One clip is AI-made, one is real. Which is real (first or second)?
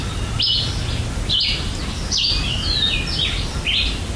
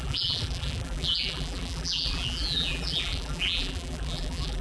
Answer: first